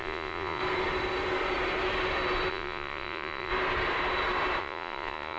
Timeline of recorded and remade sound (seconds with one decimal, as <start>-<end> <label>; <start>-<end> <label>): 0.0-0.6 remade; 0.6-2.5 recorded; 2.5-3.5 remade; 3.5-4.6 recorded; 4.6-5.4 remade